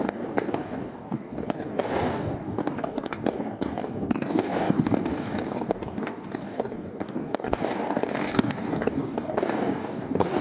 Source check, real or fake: fake